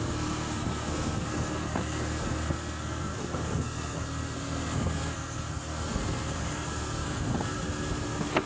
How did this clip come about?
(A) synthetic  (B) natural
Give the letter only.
A